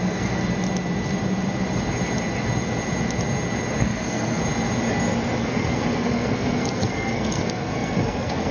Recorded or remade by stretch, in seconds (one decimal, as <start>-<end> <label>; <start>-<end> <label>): 0.0-0.4 remade; 0.4-3.8 recorded; 3.8-4.4 remade; 4.4-5.4 recorded; 5.4-8.5 remade